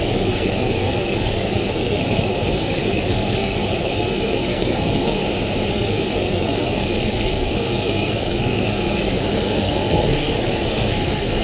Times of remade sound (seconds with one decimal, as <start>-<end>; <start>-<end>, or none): 0.0-5.2; 5.7-11.4